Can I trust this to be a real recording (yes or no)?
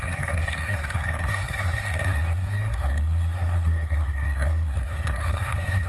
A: no